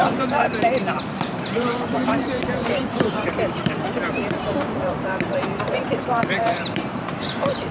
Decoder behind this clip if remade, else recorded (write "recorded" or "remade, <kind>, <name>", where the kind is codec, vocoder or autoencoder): remade, vocoder, BigVGAN v2